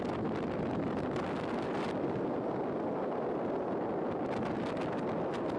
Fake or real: real